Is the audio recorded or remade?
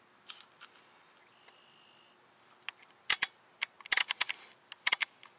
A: recorded